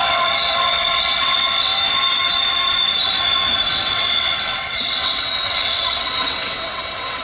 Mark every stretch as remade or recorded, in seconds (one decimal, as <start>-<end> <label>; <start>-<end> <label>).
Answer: 0.0-1.7 remade; 1.7-3.7 recorded; 3.7-7.2 remade